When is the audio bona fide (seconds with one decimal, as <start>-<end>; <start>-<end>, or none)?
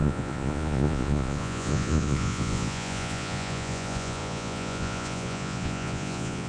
none